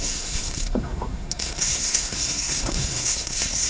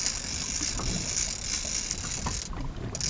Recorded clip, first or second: second